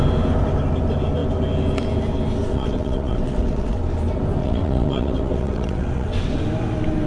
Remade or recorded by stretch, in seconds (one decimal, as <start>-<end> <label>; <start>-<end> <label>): 0.0-2.5 recorded; 2.5-3.8 remade; 3.8-4.4 recorded; 4.4-6.4 remade; 6.4-7.1 recorded